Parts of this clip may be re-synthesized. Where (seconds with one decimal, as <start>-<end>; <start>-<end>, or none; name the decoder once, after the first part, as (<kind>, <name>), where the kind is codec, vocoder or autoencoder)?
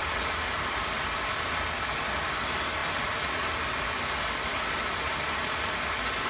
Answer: none